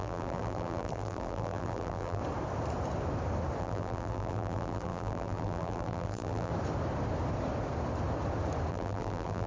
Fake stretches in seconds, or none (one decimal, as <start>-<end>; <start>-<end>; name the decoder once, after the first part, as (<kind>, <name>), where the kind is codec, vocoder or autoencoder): 0.0-2.2 (vocoder, BigVGAN v2); 3.6-6.5; 8.7-9.5